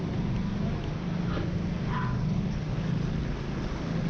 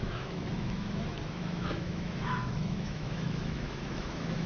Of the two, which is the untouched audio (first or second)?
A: first